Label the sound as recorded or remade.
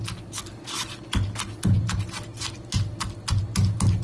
recorded